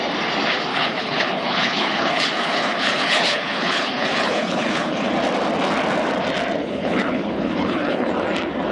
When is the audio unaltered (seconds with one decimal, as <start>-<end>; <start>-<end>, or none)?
0.0-0.7; 5.1-6.6; 8.1-8.7